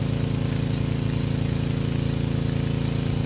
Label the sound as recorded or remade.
recorded